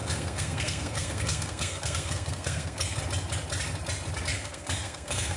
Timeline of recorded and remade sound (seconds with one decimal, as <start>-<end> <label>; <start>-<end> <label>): 0.0-3.0 remade; 3.0-4.3 recorded; 4.3-5.4 remade